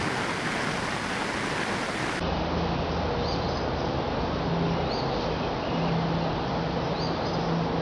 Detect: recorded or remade recorded